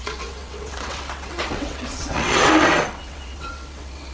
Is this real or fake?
fake